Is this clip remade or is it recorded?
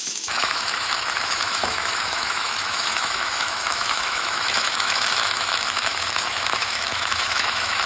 remade